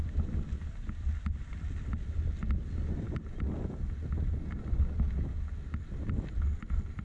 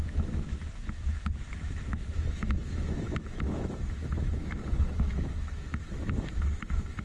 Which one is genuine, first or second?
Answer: first